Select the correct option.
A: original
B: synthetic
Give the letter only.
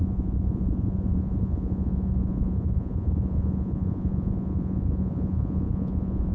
B